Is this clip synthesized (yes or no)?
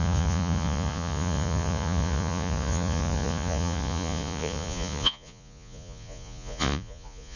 yes